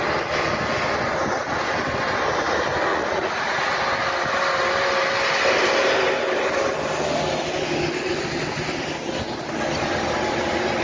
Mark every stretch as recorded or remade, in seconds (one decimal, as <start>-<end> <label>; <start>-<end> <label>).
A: 0.0-2.9 recorded; 2.9-3.8 remade; 3.8-10.8 recorded